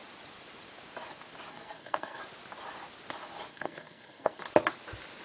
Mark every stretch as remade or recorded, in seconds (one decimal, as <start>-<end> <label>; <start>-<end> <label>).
0.0-1.5 recorded; 1.5-2.2 remade; 2.2-3.5 recorded; 3.5-4.4 remade; 4.4-5.2 recorded